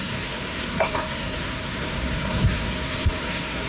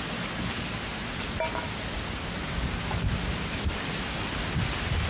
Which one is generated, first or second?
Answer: first